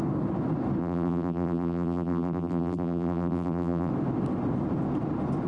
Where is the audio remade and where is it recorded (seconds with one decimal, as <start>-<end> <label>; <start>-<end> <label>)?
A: 0.0-0.8 recorded; 0.8-3.9 remade; 3.9-5.5 recorded